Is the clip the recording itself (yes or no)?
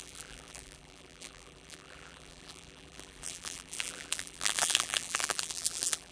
no